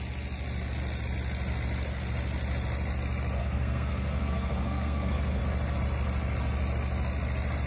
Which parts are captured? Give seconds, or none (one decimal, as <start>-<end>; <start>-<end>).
0.0-3.4; 5.4-7.7